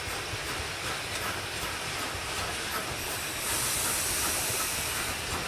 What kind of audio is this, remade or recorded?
recorded